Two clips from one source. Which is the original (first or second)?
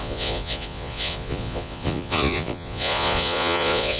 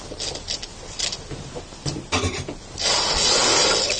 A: second